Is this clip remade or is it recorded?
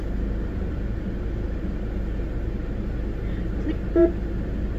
recorded